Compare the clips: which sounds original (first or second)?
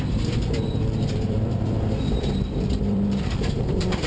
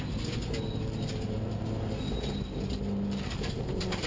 second